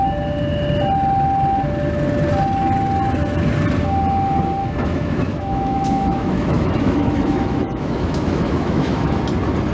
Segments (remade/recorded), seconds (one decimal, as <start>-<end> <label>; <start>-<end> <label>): 0.0-4.6 recorded; 4.6-9.2 remade; 9.2-9.7 recorded